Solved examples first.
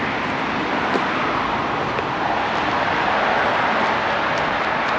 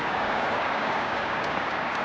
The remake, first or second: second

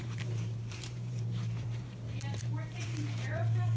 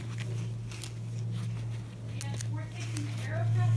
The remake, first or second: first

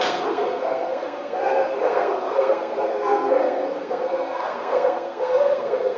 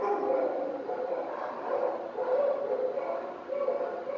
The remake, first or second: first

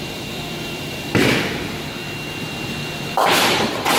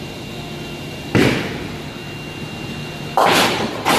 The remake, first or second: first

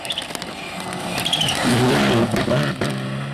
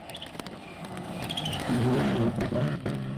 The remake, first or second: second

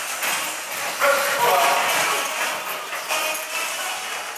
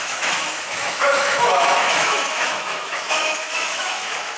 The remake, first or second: second